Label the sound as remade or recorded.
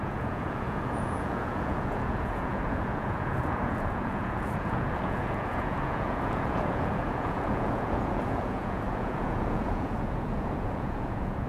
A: remade